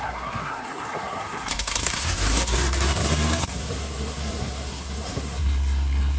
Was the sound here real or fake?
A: fake